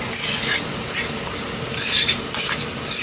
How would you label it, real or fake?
real